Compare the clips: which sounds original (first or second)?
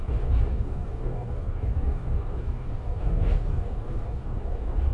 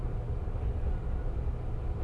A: second